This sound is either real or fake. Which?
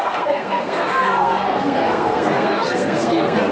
fake